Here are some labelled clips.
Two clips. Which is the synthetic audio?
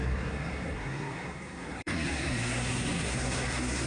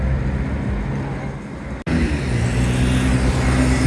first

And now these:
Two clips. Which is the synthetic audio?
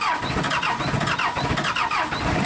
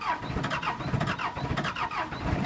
second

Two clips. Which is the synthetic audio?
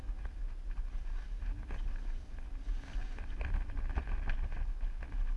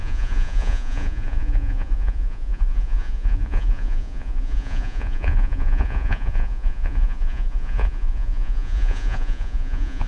second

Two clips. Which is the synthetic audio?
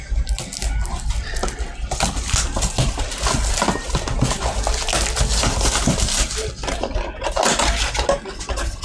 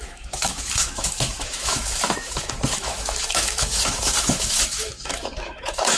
second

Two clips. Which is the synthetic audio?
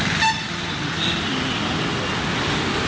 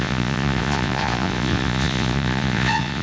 second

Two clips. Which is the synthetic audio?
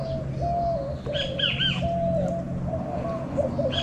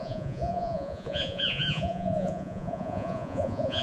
second